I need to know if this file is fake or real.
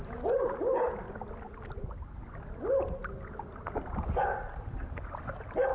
real